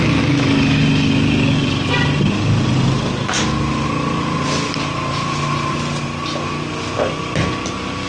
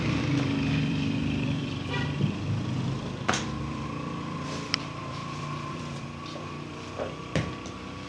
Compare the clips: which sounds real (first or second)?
first